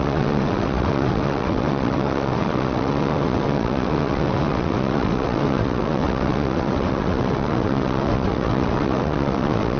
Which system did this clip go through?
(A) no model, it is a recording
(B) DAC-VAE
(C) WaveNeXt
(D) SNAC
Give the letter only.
C